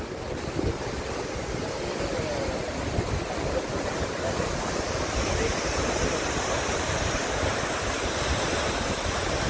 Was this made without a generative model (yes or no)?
yes